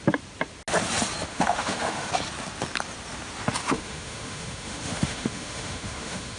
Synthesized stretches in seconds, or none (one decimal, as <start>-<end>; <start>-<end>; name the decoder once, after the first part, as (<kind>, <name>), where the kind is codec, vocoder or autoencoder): 1.3-2.1 (autoencoder, DAC-VAE); 3.6-6.4